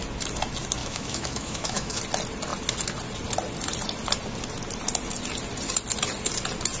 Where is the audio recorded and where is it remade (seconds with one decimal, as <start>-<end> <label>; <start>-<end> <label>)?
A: 0.0-0.8 recorded; 0.8-2.0 remade; 2.0-6.8 recorded